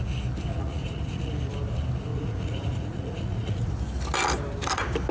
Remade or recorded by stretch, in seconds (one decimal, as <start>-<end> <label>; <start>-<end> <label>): 0.0-0.5 recorded; 0.5-1.3 remade; 1.3-2.1 recorded; 2.1-3.7 remade; 3.7-5.1 recorded